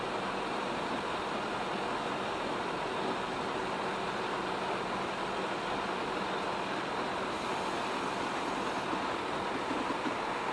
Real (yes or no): yes